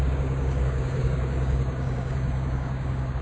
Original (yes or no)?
no